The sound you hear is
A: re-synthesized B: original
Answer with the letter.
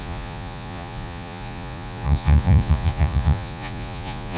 A